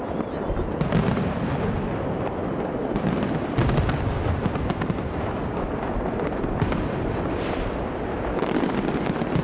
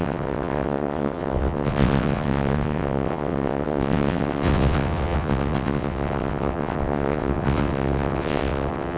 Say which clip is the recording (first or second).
first